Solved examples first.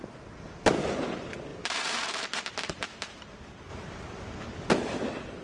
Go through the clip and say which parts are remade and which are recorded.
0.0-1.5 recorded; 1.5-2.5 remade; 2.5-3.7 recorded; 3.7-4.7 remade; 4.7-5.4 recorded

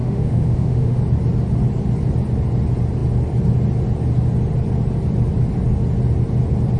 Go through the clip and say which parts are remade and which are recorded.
0.0-1.0 remade; 1.0-6.8 recorded

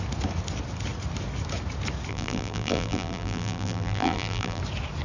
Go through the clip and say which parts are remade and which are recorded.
0.0-2.1 recorded; 2.1-4.6 remade; 4.6-5.0 recorded

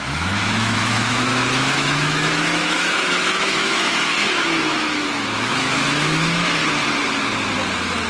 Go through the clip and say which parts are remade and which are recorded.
0.0-6.6 remade; 6.6-8.1 recorded

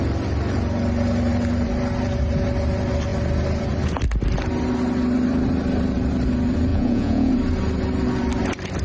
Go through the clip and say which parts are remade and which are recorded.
0.0-6.7 recorded; 6.7-7.3 remade; 7.3-8.8 recorded